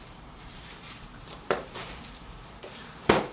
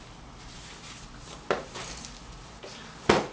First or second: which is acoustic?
second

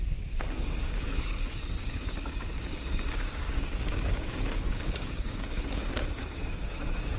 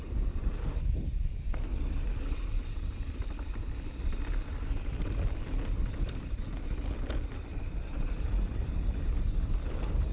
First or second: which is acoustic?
second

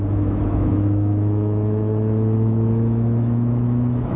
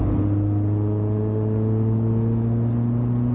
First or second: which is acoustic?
second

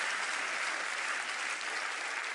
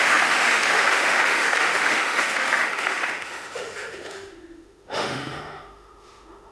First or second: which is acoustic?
first